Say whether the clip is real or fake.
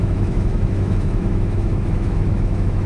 fake